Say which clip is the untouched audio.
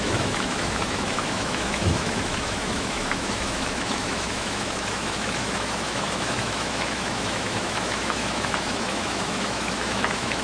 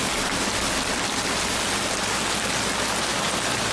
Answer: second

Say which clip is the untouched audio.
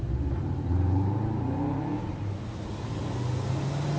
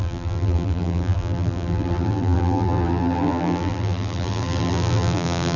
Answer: first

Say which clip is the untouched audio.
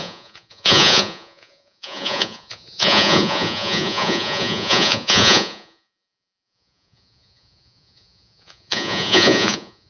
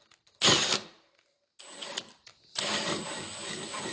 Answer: second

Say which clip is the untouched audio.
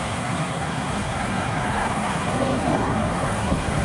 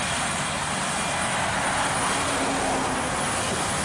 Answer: second